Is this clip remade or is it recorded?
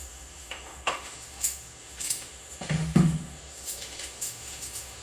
remade